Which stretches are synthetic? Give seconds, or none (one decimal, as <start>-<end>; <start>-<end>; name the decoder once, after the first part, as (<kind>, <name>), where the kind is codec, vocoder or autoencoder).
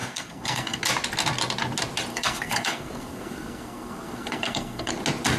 0.0-0.8 (codec, SNAC); 2.1-4.9